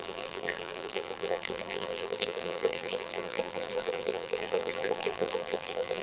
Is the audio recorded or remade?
remade